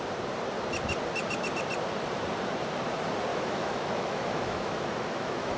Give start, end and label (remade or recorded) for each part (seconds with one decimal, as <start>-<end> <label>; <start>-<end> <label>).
0.0-3.3 recorded; 3.3-5.6 remade